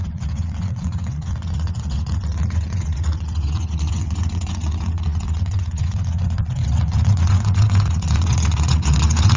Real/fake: fake